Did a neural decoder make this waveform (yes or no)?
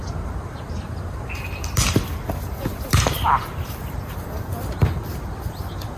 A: no